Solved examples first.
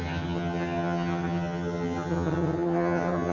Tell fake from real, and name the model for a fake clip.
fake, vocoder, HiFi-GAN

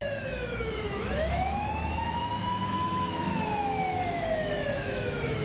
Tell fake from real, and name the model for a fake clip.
fake, autoencoder, DAC-VAE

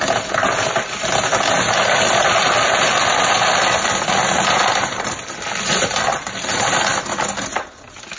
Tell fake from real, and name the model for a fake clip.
real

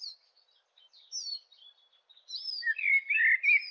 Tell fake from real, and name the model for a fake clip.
real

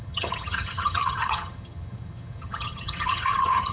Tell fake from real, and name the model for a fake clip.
fake, vocoder, HiFi-GAN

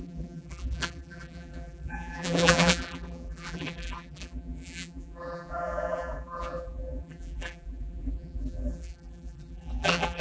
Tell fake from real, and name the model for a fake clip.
fake, vocoder, BigVGAN v2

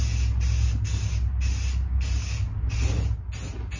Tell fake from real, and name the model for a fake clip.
real